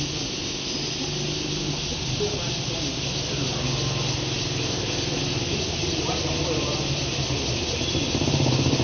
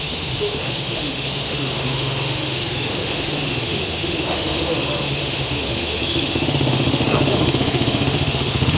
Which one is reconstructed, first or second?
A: second